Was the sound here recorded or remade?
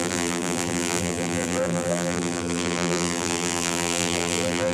remade